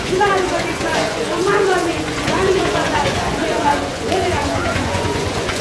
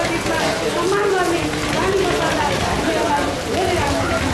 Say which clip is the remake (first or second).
first